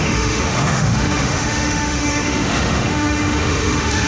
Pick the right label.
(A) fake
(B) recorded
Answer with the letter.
A